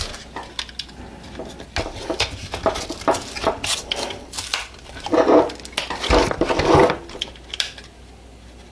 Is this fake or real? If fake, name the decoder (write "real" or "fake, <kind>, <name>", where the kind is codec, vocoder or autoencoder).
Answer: real